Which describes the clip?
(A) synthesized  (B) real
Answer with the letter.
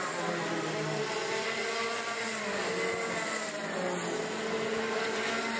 B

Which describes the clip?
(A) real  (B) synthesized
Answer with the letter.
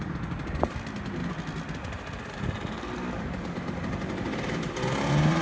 A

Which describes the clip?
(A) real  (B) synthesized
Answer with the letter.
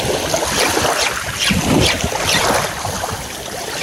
B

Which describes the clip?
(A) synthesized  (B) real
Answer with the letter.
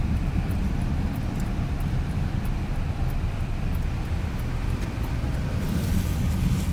A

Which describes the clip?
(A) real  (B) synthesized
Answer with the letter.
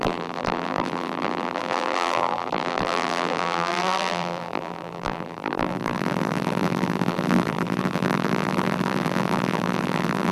B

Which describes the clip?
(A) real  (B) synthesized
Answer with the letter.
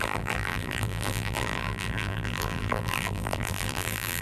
B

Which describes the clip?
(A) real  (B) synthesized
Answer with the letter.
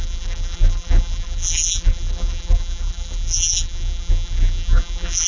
B